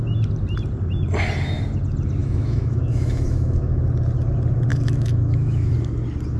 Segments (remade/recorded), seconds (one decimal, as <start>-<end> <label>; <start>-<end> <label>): 0.0-2.2 recorded; 2.2-3.8 remade; 3.8-4.7 recorded; 4.7-5.7 remade; 5.7-6.4 recorded